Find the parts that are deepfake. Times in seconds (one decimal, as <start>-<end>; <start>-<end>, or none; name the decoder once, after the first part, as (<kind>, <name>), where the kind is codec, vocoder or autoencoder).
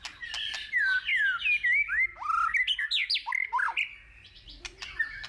none